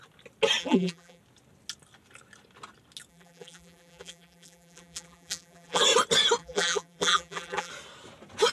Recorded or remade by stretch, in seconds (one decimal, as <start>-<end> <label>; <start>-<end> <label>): 0.0-0.6 recorded; 0.6-1.2 remade; 1.2-3.1 recorded; 3.1-5.8 remade; 5.8-6.4 recorded; 6.4-7.7 remade; 7.7-8.5 recorded